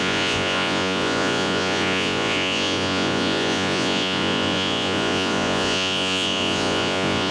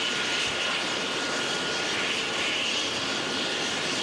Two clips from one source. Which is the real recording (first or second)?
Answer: second